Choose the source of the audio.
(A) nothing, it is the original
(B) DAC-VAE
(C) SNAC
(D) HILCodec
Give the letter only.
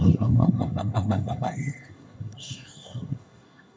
C